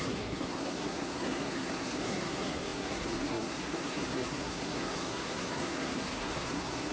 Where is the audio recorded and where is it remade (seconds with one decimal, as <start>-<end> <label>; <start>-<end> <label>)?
0.0-6.9 remade